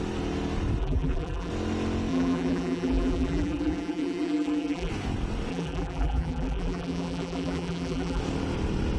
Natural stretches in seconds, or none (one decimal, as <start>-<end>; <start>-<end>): 0.0-0.8; 1.5-2.1; 4.9-5.5; 8.2-9.0